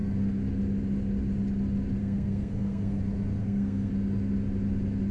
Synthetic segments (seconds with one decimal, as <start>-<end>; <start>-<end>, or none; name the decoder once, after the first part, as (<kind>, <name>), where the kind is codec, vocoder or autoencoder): 2.0-3.0 (codec, SNAC); 3.4-3.9